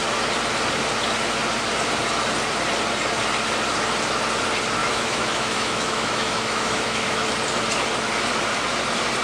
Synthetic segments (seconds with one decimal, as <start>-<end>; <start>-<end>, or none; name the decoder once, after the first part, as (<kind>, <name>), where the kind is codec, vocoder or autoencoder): 4.8-7.3 (autoencoder, DAC-VAE)